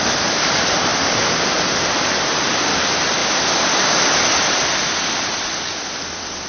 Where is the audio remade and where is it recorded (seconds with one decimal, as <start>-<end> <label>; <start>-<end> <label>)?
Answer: 0.0-0.9 recorded; 0.9-2.4 remade; 2.4-3.2 recorded; 3.2-5.5 remade; 5.5-6.5 recorded